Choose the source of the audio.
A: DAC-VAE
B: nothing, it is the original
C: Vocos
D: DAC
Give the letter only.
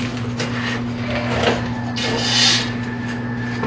B